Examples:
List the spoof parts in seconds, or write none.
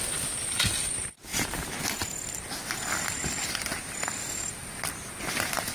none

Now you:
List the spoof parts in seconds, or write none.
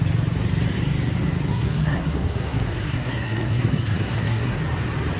1.5-4.6 (codec, SNAC)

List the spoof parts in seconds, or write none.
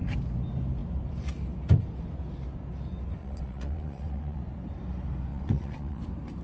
3.2-4.4 (vocoder, WaveNeXt); 5.3-6.0